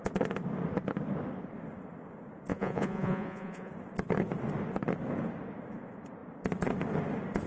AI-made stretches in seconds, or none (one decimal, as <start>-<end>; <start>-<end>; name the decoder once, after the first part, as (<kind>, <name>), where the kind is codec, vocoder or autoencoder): 2.5-3.7 (vocoder, Vocos)